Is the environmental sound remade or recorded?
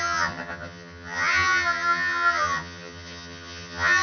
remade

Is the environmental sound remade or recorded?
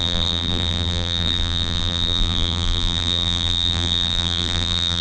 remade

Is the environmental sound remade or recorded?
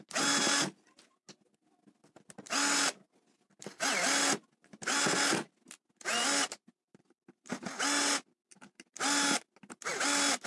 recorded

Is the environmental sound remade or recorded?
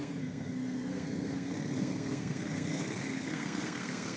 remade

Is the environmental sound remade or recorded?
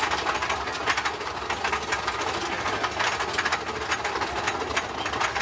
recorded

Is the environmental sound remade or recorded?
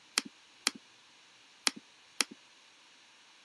recorded